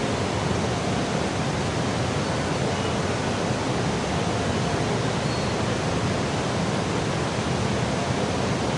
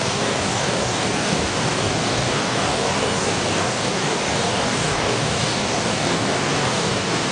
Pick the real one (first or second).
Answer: first